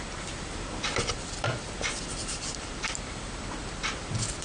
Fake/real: fake